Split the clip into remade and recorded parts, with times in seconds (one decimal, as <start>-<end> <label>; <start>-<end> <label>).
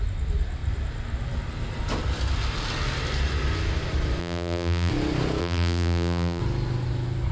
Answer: 0.0-4.2 recorded; 4.2-4.9 remade; 4.9-5.4 recorded; 5.4-6.4 remade; 6.4-7.3 recorded